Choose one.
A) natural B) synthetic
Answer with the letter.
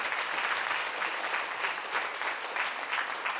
A